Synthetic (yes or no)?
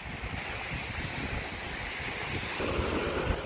no